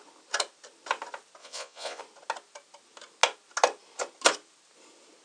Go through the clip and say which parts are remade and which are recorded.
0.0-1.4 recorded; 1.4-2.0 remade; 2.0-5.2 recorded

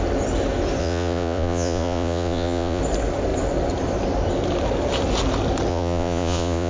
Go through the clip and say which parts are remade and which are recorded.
0.0-0.8 recorded; 0.8-2.8 remade; 2.8-5.7 recorded; 5.7-6.7 remade

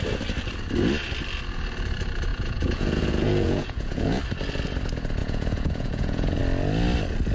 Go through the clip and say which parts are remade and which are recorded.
0.0-2.3 recorded; 2.3-4.2 remade; 4.2-5.2 recorded; 5.2-6.4 remade; 6.4-7.3 recorded

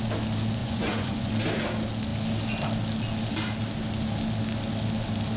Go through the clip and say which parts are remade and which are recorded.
0.0-0.6 recorded; 0.6-1.3 remade; 1.3-5.4 recorded

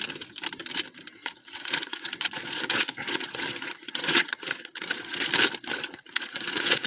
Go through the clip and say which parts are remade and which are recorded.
0.0-1.2 recorded; 1.2-5.3 remade; 5.3-5.7 recorded; 5.7-6.9 remade

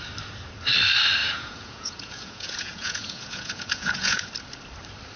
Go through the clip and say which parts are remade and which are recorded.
0.0-1.2 recorded; 1.2-4.3 remade; 4.3-5.2 recorded